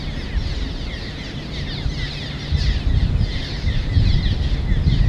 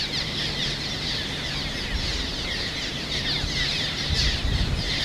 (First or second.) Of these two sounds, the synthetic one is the second